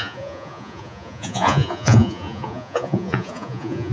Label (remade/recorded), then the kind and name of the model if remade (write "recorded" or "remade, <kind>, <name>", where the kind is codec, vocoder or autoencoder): remade, vocoder, Vocos